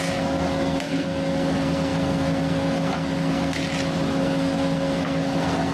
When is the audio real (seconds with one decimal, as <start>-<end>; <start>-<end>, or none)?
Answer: 3.6-4.2